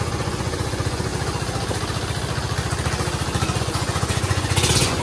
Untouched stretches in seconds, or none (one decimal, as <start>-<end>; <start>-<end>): 1.1-3.6